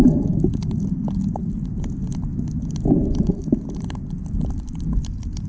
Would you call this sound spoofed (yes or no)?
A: no